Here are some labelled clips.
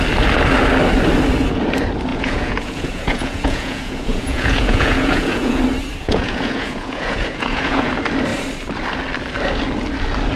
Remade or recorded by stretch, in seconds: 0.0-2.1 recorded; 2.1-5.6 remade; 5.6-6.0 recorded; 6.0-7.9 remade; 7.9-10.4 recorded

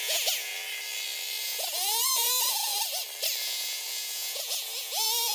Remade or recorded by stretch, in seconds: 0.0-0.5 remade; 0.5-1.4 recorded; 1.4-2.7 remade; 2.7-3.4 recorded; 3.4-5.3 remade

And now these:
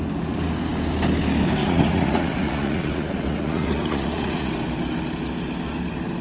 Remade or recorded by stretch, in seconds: 0.0-1.6 recorded; 1.6-4.5 remade; 4.5-6.2 recorded

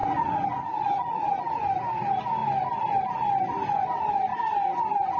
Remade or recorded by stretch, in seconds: 0.0-1.4 remade; 1.4-5.2 recorded

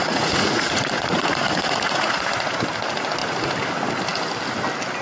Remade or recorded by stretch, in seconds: 0.0-2.6 remade; 2.6-5.0 recorded

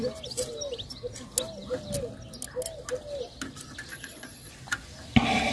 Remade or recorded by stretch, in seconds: 0.0-3.9 recorded; 3.9-4.5 remade; 4.5-5.5 recorded